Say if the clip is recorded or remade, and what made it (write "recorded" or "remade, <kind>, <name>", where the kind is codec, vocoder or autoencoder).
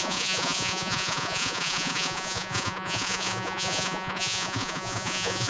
remade, vocoder, Vocos